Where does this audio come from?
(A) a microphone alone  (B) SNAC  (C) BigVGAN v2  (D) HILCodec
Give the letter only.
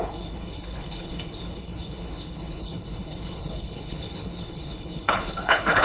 D